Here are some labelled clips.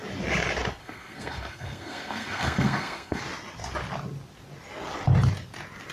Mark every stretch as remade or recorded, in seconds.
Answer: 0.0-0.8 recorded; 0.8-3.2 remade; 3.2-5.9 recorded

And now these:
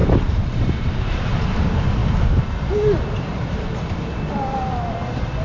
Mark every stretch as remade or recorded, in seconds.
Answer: 0.0-1.4 remade; 1.4-2.0 recorded; 2.0-4.1 remade; 4.1-5.4 recorded